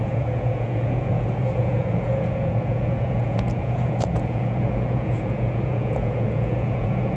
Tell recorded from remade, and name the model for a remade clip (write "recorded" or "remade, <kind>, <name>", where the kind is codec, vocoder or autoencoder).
remade, vocoder, Vocos